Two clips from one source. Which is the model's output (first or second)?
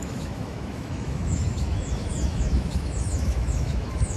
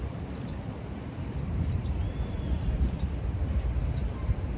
first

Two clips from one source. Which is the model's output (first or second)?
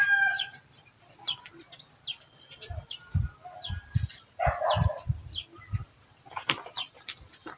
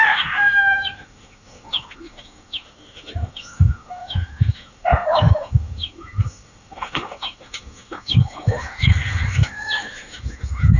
second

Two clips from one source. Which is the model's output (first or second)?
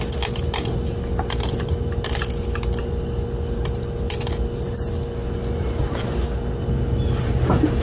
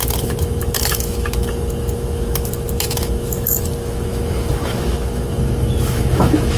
second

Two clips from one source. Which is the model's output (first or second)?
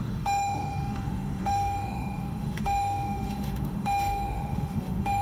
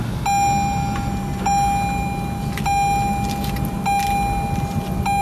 first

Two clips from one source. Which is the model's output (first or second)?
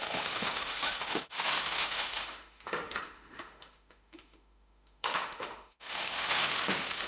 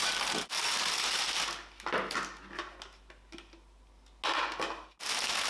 first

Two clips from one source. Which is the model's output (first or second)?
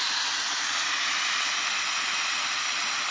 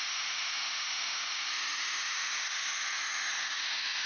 second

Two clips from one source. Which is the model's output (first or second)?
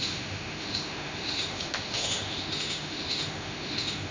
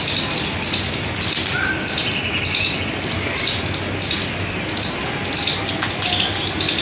first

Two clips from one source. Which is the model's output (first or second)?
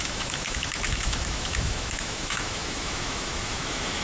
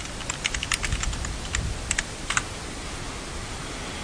first